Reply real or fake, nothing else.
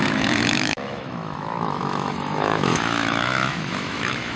fake